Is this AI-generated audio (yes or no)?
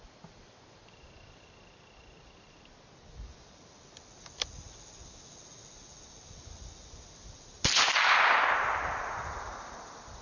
no